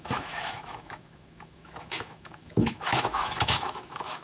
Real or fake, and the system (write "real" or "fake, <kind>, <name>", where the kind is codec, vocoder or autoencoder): fake, autoencoder, DAC-VAE